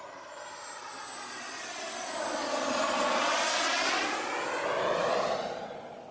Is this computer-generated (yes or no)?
no